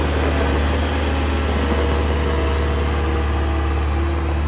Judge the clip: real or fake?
real